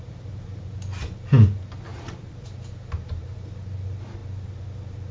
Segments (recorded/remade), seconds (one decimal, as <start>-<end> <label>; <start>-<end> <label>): 0.0-1.9 recorded; 1.9-2.6 remade; 2.6-5.1 recorded